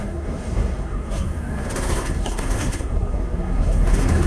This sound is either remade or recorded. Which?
remade